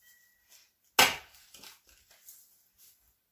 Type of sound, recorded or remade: recorded